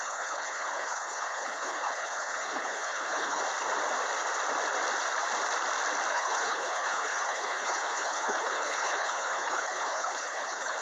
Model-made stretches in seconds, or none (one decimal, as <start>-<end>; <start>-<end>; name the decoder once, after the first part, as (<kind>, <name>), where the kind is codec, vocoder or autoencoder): 0.0-3.4 (codec, HILCodec); 6.1-10.8